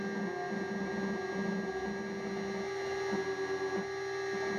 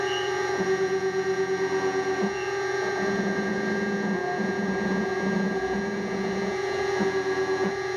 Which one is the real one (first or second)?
first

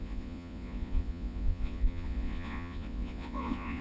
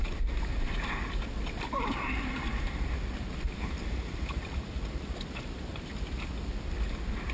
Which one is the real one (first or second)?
second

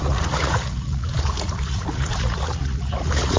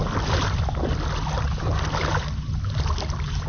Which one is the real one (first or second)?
second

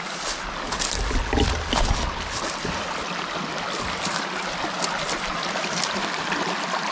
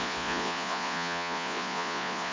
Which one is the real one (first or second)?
first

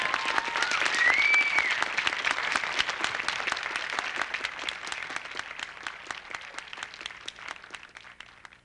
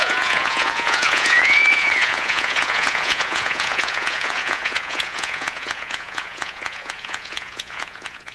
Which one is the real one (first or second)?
first